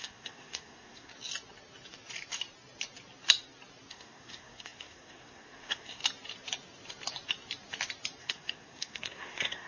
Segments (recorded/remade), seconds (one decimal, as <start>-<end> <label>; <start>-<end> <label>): 0.0-1.1 remade; 1.1-3.9 recorded; 3.9-6.0 remade; 6.0-8.2 recorded; 8.2-9.7 remade